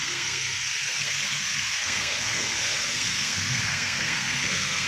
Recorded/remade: remade